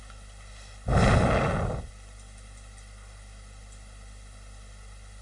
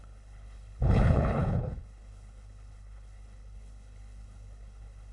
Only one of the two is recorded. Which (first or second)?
first